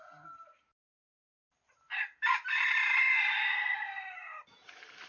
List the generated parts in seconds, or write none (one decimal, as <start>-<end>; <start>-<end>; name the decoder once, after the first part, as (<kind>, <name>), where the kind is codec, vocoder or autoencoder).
none